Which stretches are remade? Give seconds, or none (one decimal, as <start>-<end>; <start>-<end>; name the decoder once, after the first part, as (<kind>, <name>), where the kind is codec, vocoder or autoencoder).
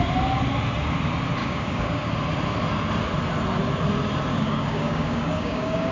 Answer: 1.4-2.1 (codec, DAC); 4.3-5.9